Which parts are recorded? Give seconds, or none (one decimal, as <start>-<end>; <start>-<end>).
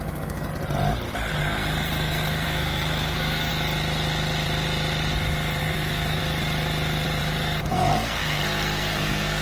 0.5-1.4; 3.5-5.6; 6.2-7.2